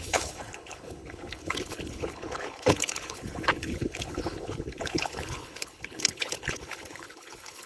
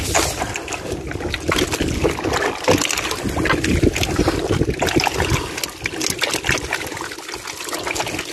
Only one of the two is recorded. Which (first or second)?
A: second